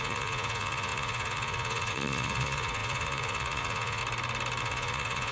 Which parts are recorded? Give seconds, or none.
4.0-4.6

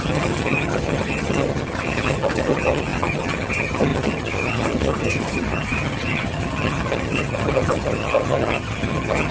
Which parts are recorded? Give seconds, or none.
none

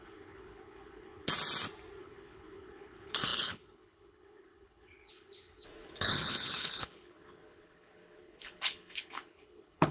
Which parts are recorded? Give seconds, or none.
1.3-2.0